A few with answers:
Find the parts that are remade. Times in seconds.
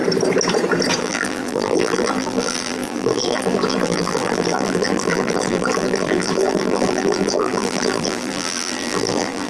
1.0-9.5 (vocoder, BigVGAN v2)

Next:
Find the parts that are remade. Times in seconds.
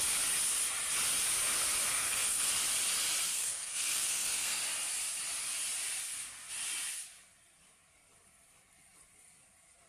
1.9-2.5 (codec, SNAC); 3.3-4.6